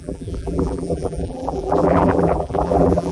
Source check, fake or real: fake